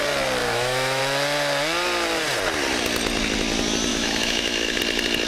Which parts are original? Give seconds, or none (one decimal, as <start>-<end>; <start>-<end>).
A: 0.0-0.4; 1.0-3.9; 4.8-5.3